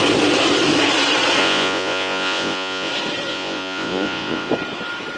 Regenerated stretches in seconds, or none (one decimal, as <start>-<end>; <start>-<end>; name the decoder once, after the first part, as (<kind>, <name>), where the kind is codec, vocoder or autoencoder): 1.4-2.9 (vocoder, Vocos); 3.3-4.5